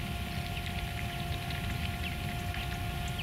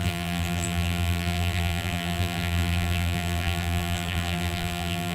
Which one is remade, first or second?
second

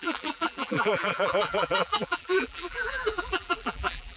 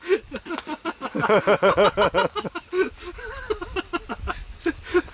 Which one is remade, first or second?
first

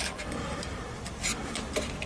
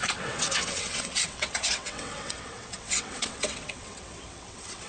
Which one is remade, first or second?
second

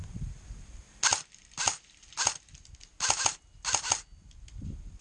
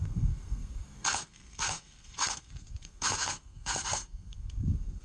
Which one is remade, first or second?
second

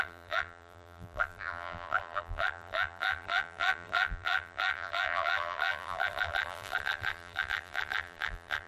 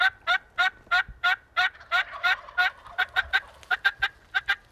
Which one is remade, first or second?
first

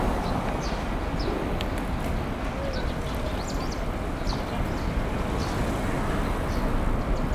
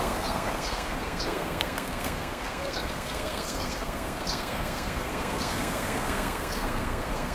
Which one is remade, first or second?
second